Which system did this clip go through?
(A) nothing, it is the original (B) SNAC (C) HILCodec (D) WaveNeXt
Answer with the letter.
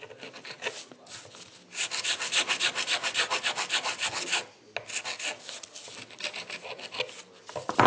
A